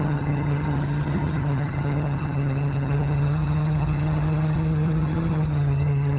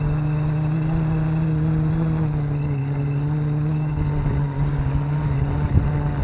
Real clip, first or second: second